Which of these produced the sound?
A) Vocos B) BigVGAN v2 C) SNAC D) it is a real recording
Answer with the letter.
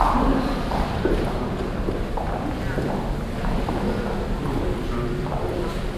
B